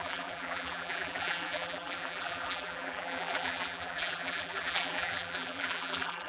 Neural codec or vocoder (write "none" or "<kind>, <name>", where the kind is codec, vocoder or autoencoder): vocoder, BigVGAN v2